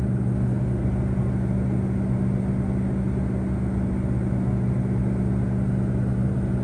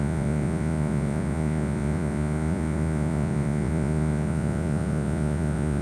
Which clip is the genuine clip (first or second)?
first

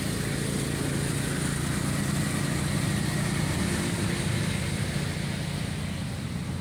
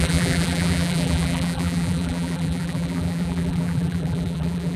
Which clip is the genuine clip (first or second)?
first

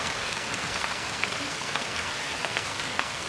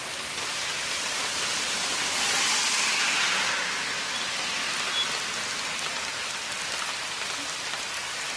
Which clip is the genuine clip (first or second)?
second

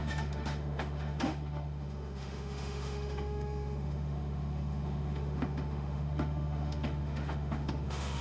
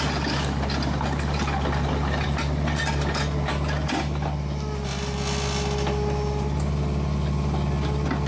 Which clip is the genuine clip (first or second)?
second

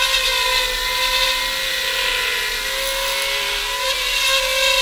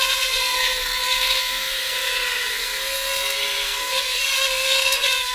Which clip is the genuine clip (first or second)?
first